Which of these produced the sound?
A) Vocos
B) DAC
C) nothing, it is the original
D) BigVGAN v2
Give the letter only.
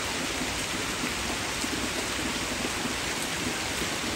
C